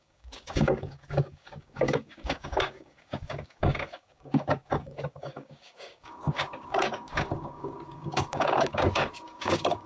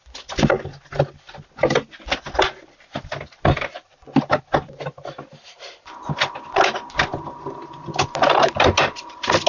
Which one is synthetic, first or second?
first